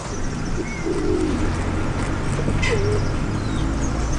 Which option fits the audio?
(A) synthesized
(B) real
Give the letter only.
B